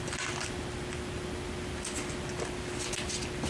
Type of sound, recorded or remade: recorded